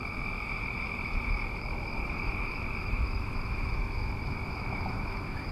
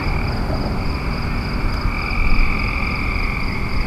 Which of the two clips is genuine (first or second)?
second